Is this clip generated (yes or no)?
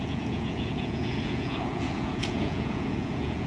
yes